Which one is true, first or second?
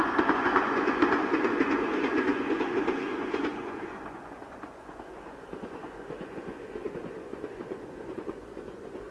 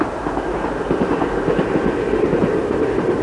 second